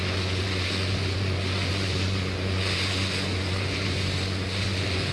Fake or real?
fake